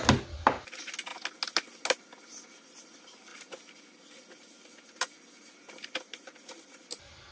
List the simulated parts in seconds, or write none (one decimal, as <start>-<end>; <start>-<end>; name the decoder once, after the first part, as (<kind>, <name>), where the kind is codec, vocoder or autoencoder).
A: none